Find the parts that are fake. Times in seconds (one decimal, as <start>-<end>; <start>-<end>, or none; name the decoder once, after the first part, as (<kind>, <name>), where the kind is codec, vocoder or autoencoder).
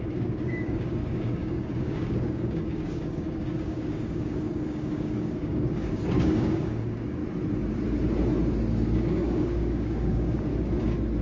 0.0-7.2 (codec, DAC); 9.0-10.5